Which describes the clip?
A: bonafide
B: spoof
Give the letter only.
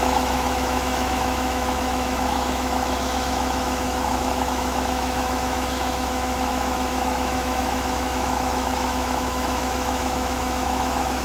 B